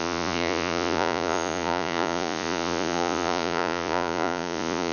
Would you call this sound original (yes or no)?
no